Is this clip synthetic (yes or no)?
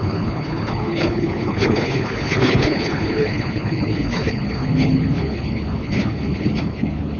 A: yes